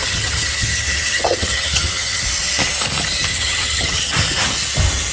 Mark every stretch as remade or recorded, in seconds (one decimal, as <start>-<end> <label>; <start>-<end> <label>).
0.0-2.2 remade; 2.2-3.3 recorded; 3.3-4.0 remade; 4.0-5.1 recorded